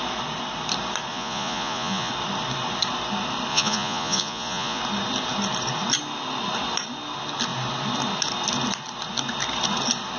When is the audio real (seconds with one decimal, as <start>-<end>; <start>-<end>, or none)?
0.0-1.1; 2.1-3.5; 4.8-10.2